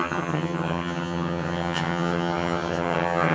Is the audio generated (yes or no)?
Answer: yes